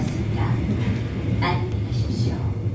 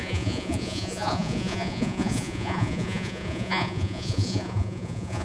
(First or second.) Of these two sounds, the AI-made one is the second